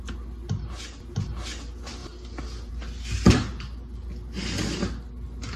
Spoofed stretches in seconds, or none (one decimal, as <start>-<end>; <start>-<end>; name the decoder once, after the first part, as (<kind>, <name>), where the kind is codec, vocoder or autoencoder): none